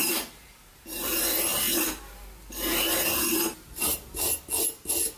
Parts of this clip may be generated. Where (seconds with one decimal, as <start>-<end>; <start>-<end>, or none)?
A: 0.0-1.1